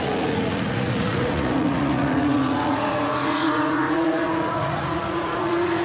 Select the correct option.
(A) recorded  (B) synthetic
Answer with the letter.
B